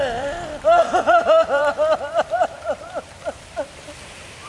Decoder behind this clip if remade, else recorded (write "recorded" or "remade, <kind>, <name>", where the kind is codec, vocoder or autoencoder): remade, vocoder, BigVGAN v2